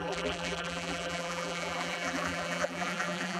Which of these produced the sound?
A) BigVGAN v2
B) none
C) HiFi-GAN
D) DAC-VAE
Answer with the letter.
A